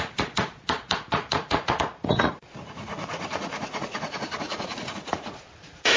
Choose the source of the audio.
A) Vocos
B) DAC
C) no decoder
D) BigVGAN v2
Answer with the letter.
A